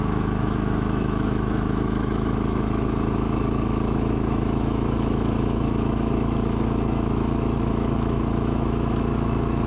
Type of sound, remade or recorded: remade